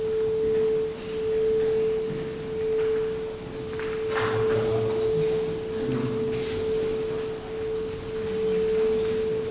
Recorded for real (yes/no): yes